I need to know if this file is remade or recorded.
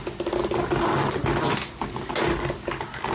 recorded